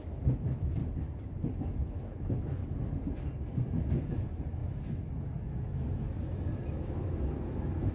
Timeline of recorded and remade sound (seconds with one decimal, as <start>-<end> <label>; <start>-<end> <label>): 0.0-0.8 remade; 0.8-1.4 recorded; 1.4-2.6 remade; 2.6-3.5 recorded; 3.5-7.9 remade